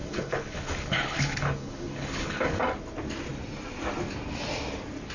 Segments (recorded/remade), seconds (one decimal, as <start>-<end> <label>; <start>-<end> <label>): 0.0-2.6 remade; 2.6-5.1 recorded